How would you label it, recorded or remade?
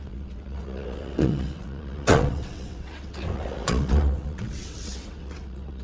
remade